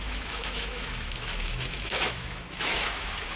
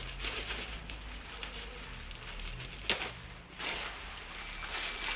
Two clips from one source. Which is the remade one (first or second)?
first